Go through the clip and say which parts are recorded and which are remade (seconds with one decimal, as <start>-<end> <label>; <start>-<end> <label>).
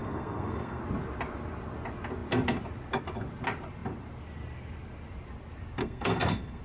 0.0-0.8 remade; 0.8-5.8 recorded; 5.8-6.6 remade